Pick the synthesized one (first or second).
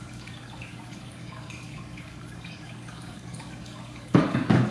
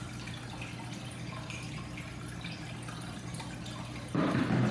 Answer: first